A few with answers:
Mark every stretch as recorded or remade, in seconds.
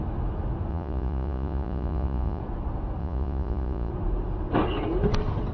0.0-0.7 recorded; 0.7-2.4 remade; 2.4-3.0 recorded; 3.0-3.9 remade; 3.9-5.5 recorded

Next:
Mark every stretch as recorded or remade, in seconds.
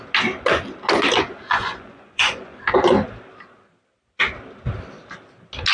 0.0-1.4 recorded; 1.4-2.6 remade; 2.6-5.7 recorded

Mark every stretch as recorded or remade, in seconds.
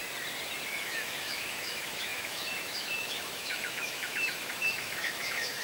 0.0-0.7 recorded; 0.7-5.6 remade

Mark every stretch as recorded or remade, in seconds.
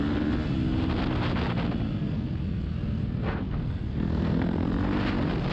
0.0-2.0 recorded; 2.0-4.7 remade; 4.7-5.5 recorded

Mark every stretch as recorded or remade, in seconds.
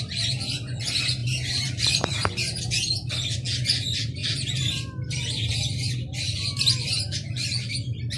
0.0-1.2 recorded; 1.2-2.6 remade; 2.6-4.2 recorded; 4.2-4.7 remade; 4.7-8.2 recorded